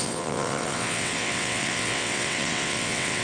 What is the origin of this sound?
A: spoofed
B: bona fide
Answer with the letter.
A